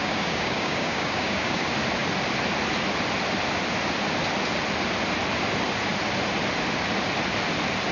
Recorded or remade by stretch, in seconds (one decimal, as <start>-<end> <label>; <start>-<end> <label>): 0.0-1.6 remade; 1.6-7.9 recorded